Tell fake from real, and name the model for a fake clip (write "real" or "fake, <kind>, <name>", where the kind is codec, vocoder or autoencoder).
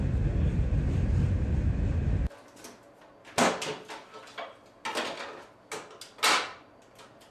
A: real